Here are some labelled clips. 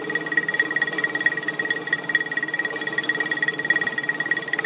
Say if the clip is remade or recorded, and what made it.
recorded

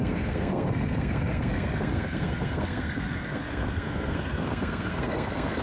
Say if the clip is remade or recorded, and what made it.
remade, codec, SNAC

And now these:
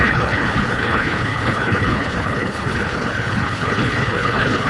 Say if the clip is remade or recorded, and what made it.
remade, codec, HILCodec